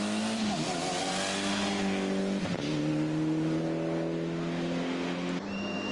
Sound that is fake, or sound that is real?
real